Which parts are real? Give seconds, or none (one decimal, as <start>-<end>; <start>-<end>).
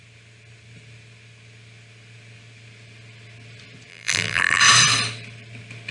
0.0-3.9; 4.6-5.9